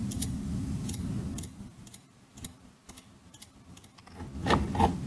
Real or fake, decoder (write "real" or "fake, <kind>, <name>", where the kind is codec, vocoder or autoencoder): real